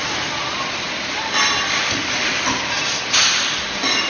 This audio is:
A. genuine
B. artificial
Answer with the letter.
A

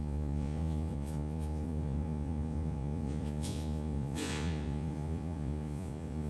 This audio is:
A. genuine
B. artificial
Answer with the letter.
B